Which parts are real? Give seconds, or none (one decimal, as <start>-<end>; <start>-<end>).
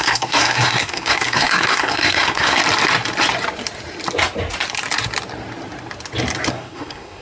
2.6-6.5